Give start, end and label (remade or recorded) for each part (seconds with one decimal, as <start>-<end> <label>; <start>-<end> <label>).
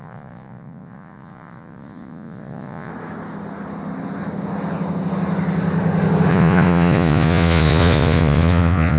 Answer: 0.0-2.9 remade; 2.9-6.3 recorded; 6.3-9.0 remade